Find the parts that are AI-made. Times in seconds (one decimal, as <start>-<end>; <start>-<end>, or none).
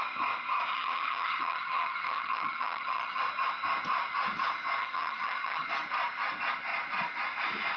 0.7-3.2; 4.8-5.7